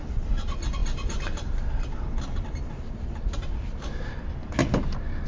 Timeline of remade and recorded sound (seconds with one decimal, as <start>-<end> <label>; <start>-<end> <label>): 0.0-5.3 recorded